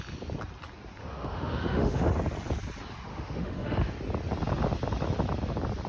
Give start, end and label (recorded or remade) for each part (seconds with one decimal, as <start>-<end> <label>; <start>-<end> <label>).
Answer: 0.0-1.0 recorded; 1.0-2.1 remade; 2.1-3.1 recorded; 3.1-3.9 remade; 3.9-5.9 recorded